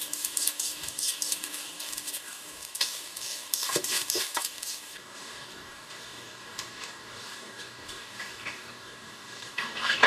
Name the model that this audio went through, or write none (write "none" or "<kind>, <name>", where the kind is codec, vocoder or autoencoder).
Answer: codec, DAC